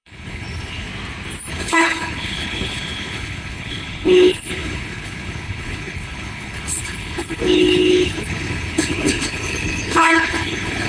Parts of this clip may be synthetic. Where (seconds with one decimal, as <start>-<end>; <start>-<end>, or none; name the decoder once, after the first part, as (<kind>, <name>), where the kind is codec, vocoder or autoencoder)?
0.0-0.9 (codec, HILCodec); 1.5-10.9